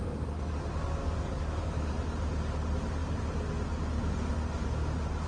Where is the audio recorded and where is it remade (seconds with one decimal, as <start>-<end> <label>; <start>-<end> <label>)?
0.0-1.0 recorded; 1.0-1.9 remade; 1.9-5.3 recorded

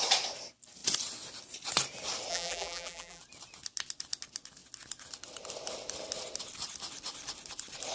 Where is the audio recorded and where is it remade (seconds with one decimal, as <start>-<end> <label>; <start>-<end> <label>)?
0.0-2.3 recorded; 2.3-3.2 remade; 3.2-7.9 recorded

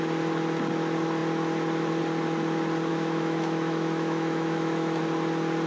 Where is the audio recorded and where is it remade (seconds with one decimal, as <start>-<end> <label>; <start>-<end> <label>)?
0.0-2.9 recorded; 2.9-5.0 remade; 5.0-5.7 recorded

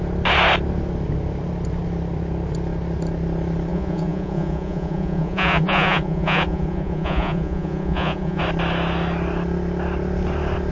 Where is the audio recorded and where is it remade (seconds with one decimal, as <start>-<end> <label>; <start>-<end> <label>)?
0.0-3.7 recorded; 3.7-8.4 remade; 8.4-10.7 recorded

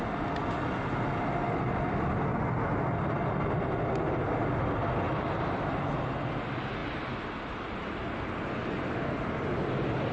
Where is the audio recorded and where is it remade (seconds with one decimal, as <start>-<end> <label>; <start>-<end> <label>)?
0.0-10.1 recorded

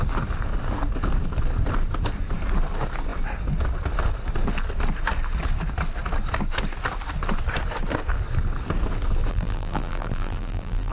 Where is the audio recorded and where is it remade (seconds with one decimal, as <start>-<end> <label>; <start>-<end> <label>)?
0.0-9.3 recorded; 9.3-10.9 remade

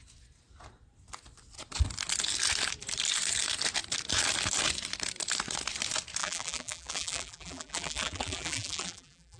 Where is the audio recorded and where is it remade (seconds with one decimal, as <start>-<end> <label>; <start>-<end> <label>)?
0.0-6.2 recorded; 6.2-9.4 remade